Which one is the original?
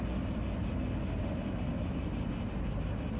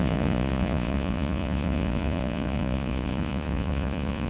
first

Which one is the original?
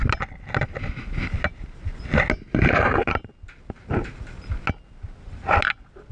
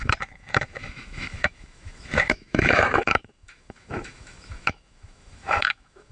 first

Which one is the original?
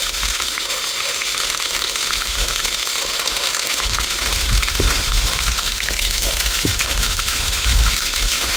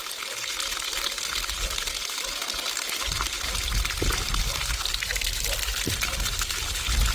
second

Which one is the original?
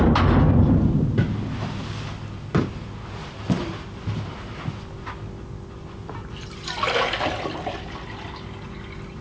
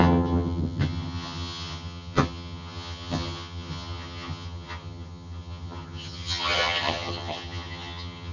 first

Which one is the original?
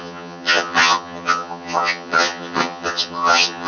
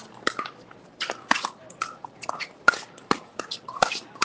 second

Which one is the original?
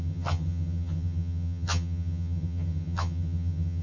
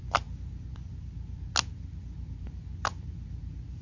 second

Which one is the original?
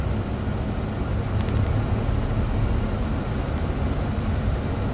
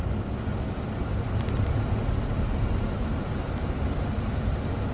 first